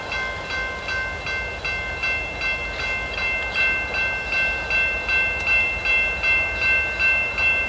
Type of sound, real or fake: real